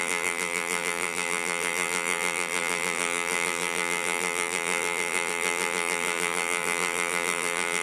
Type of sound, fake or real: fake